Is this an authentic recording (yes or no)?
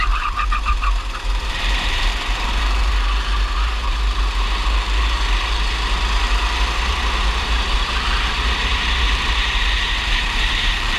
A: no